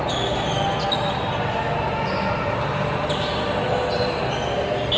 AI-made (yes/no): no